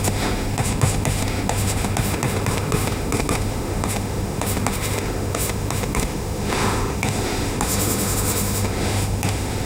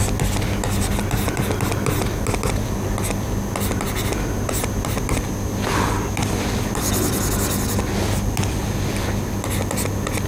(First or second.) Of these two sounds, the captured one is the second